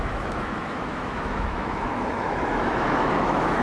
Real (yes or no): no